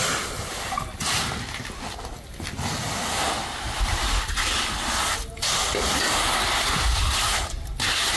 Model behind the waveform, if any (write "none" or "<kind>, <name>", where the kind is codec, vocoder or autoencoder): none